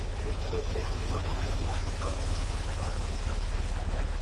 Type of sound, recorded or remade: remade